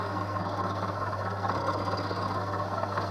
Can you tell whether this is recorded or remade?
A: remade